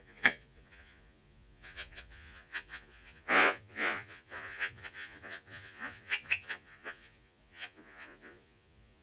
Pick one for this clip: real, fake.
fake